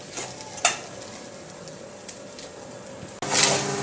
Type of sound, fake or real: real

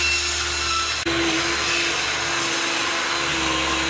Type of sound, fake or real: real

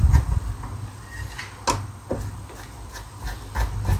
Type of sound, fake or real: real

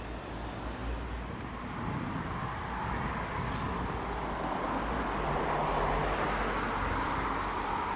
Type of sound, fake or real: real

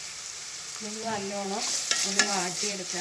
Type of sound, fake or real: fake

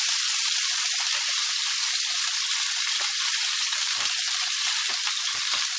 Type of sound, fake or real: fake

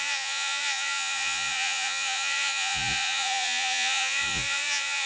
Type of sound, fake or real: fake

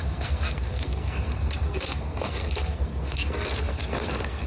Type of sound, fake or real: fake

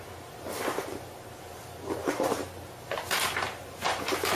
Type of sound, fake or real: real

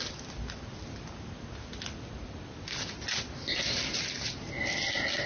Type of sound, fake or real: real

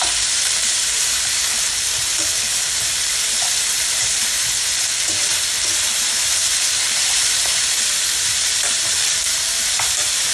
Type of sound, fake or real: fake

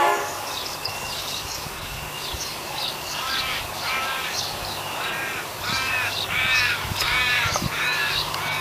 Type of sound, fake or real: fake